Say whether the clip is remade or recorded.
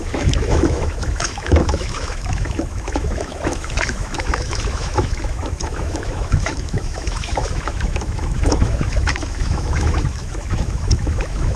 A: remade